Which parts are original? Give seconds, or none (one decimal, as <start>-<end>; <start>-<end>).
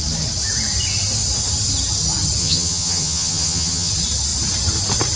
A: 0.0-2.4; 3.9-5.2